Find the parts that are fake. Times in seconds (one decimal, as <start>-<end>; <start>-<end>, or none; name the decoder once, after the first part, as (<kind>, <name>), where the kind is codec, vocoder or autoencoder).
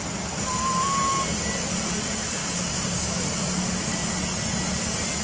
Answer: 2.4-3.2 (codec, DAC)